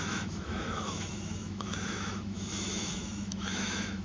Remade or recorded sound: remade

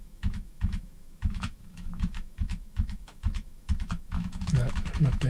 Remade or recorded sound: remade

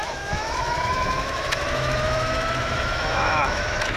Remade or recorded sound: remade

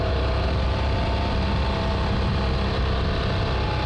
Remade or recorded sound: recorded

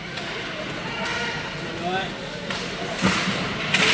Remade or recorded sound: recorded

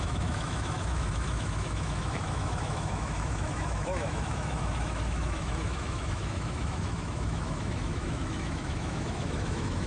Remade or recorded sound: remade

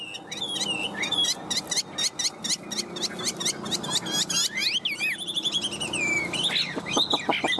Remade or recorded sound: recorded